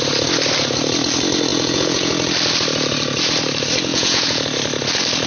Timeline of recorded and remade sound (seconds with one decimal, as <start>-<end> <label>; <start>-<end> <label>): 0.0-1.5 recorded; 1.5-2.1 remade; 2.1-3.9 recorded; 3.9-4.4 remade; 4.4-5.3 recorded